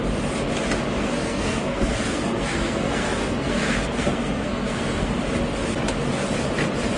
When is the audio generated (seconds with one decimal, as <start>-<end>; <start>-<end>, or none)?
1.0-5.2